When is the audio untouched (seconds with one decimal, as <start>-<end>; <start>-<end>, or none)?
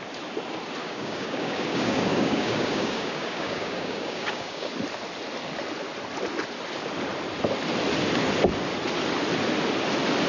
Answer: 0.0-0.8; 4.7-10.3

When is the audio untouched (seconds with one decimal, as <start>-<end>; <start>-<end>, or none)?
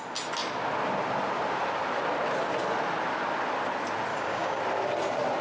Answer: 0.0-4.1; 4.6-5.4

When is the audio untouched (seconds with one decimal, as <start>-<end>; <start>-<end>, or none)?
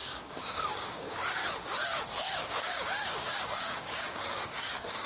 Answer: 1.4-2.2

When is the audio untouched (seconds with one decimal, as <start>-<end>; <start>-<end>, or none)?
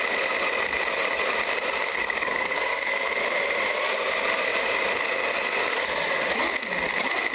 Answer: 0.0-1.9; 2.9-7.3